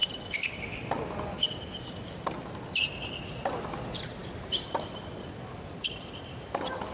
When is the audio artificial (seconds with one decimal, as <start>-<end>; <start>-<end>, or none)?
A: none